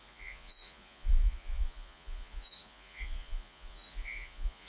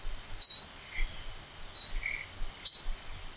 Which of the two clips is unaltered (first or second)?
second